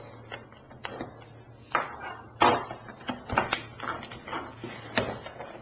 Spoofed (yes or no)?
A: no